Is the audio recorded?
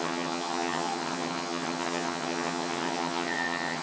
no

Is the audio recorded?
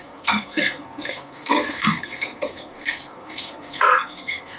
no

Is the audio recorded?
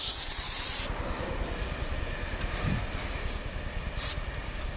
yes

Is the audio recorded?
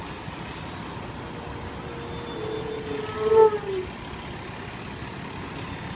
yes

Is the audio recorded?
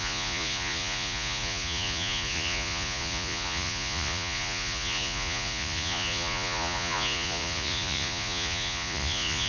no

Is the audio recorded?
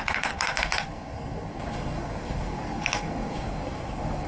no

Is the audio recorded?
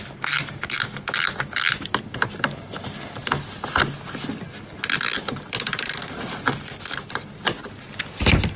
yes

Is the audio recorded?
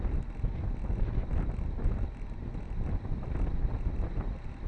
yes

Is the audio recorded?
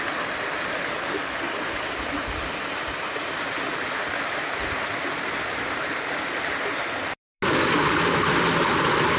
yes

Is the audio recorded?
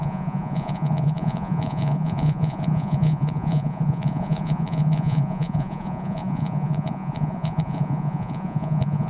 no